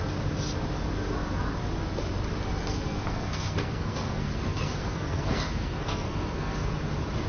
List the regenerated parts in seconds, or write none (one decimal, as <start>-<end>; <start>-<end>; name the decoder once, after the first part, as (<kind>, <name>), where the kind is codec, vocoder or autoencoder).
2.6-6.7 (codec, SNAC)